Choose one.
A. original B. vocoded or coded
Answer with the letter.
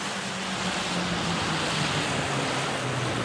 A